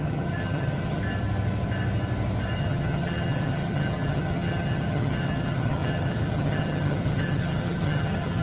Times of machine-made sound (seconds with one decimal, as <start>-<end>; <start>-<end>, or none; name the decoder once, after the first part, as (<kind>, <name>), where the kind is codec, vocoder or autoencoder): 0.0-1.0 (vocoder, HiFi-GAN); 2.6-8.4

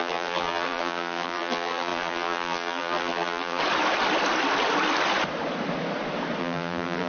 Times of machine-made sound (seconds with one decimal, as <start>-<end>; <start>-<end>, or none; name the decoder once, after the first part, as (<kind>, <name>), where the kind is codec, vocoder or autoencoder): 0.0-3.6 (vocoder, BigVGAN v2); 6.4-7.1